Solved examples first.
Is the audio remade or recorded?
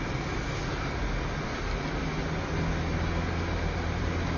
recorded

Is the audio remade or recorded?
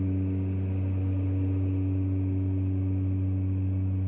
recorded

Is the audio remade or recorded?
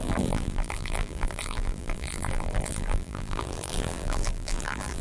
remade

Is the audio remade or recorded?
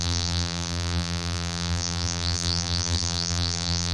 remade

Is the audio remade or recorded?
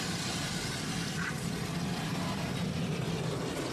remade